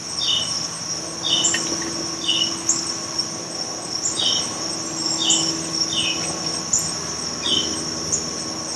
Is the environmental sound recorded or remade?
recorded